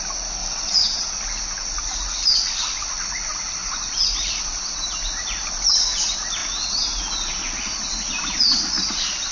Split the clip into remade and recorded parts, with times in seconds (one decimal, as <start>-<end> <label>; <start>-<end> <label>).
0.0-0.4 recorded; 0.4-1.1 remade; 1.1-9.3 recorded